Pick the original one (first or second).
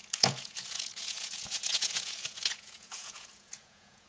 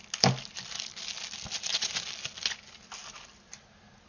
second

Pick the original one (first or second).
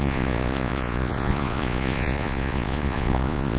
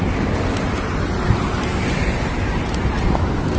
second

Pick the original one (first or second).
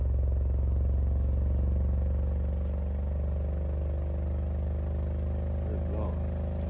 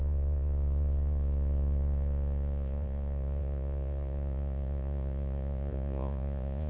first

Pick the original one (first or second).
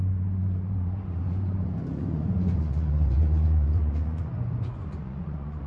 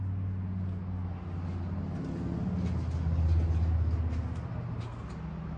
second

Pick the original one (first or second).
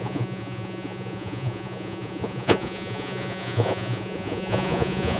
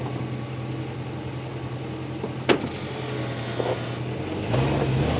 second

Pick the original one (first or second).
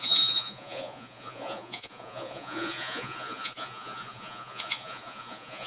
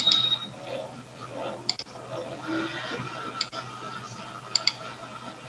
second